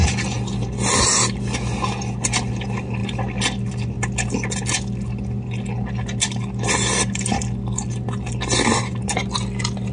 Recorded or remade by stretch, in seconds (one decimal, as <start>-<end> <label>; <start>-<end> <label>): 0.0-9.9 recorded